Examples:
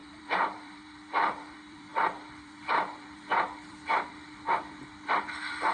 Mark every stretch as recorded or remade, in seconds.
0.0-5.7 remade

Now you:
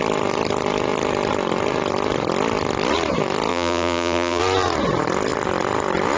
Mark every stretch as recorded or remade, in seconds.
0.0-3.5 recorded; 3.5-4.4 remade; 4.4-6.2 recorded

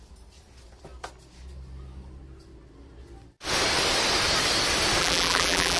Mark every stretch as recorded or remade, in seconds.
0.0-5.0 recorded; 5.0-5.8 remade

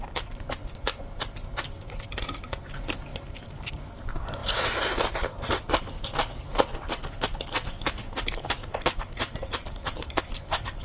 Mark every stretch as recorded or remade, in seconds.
0.0-3.1 recorded; 3.1-3.7 remade; 3.7-4.4 recorded; 4.4-5.5 remade; 5.5-8.7 recorded; 8.7-10.2 remade; 10.2-10.8 recorded

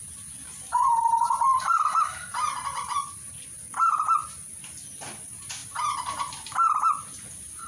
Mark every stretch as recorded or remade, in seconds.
0.0-1.5 recorded; 1.5-2.5 remade; 2.5-7.7 recorded

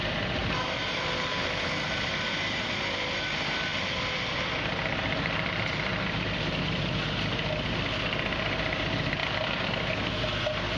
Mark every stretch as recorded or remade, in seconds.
0.0-0.4 recorded; 0.4-3.2 remade; 3.2-3.7 recorded; 3.7-6.5 remade; 6.5-10.8 recorded

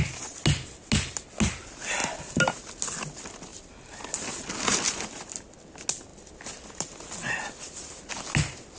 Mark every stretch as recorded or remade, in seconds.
0.0-6.1 recorded; 6.1-7.5 remade; 7.5-8.8 recorded

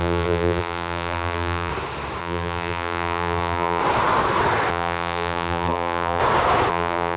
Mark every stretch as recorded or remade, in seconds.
0.0-1.7 remade; 1.7-2.2 recorded; 2.2-3.8 remade; 3.8-4.7 recorded; 4.7-6.2 remade; 6.2-6.7 recorded; 6.7-7.2 remade